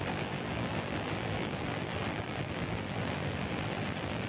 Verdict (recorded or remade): remade